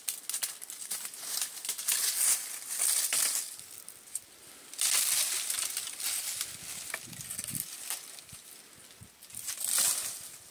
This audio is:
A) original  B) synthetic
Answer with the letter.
A